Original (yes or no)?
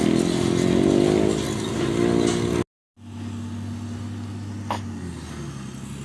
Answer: yes